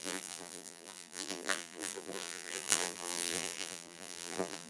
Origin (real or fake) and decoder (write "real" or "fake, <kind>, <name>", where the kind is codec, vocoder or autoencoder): fake, vocoder, BigVGAN v2